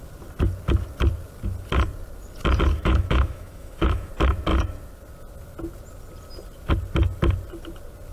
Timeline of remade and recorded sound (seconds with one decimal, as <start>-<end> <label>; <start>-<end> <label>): 0.0-2.7 recorded; 2.7-4.1 remade; 4.1-8.1 recorded